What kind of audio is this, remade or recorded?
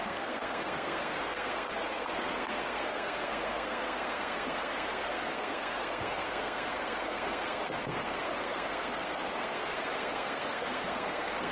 remade